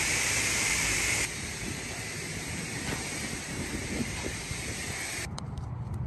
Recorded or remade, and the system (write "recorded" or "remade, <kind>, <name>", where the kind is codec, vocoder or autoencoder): remade, vocoder, BigVGAN v2